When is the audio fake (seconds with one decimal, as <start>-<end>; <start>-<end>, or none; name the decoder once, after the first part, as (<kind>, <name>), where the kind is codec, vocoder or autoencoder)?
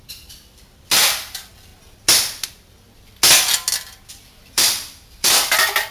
0.0-1.7 (vocoder, BigVGAN v2); 4.1-5.9